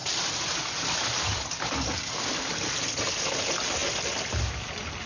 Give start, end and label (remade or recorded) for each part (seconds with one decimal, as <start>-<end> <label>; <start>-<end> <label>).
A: 0.0-5.1 recorded